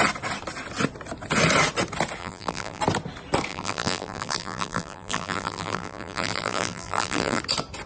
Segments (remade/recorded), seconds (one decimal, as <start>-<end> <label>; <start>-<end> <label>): 0.0-2.2 recorded; 2.2-2.8 remade; 2.8-3.5 recorded; 3.5-7.4 remade; 7.4-7.9 recorded